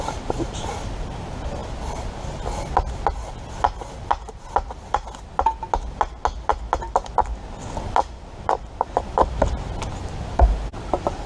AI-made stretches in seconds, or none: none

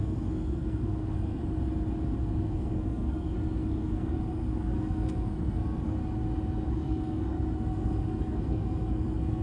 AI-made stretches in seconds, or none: 0.0-1.4 (codec, SNAC); 2.2-6.0; 6.7-9.4

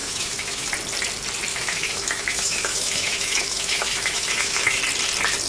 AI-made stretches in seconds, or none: 0.0-0.7 (autoencoder, DAC-VAE); 1.5-4.8

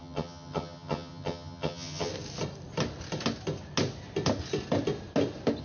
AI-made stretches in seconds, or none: 0.0-2.1 (vocoder, HiFi-GAN)

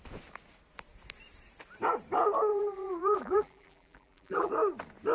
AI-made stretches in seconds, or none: 2.5-4.5 (vocoder, BigVGAN v2)

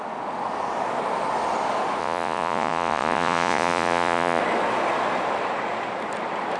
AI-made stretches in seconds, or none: 2.0-4.4 (vocoder, Vocos)